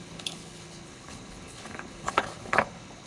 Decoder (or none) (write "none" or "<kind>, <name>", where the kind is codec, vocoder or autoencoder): codec, HILCodec